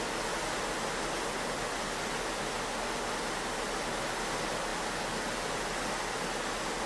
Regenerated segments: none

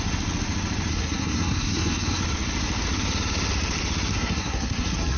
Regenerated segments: 0.9-2.2 (codec, SNAC); 4.1-5.2

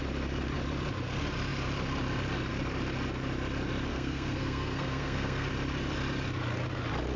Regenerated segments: 3.9-5.5 (codec, SNAC)